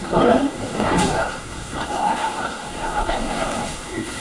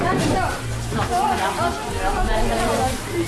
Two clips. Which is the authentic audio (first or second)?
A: second